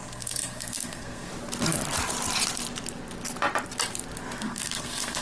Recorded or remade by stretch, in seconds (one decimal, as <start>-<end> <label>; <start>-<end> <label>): 0.0-1.3 remade; 1.3-4.4 recorded; 4.4-5.2 remade